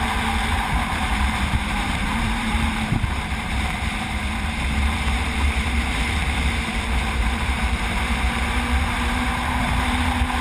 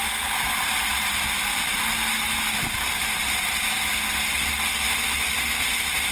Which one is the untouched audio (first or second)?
second